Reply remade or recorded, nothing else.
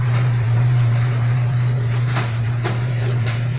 remade